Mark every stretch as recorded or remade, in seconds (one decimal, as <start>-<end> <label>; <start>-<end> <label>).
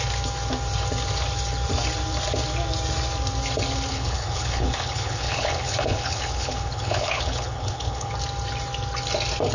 0.0-3.9 recorded; 3.9-8.1 remade; 8.1-9.5 recorded